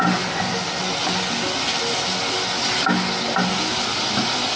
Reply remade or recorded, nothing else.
recorded